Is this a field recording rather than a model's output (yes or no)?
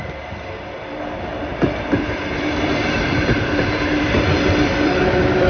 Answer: no